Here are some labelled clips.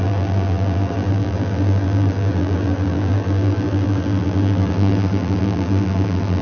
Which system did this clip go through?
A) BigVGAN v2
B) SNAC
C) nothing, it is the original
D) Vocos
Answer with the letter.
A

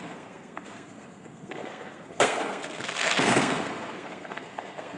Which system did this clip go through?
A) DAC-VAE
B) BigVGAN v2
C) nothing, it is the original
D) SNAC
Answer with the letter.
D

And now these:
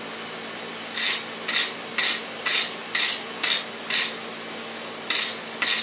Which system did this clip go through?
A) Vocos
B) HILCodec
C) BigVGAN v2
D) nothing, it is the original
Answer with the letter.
D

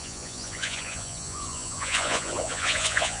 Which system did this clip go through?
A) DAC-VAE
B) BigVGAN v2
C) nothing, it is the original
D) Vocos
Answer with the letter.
D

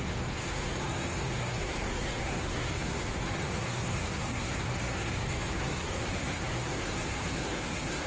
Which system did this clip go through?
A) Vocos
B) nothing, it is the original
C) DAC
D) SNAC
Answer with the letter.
D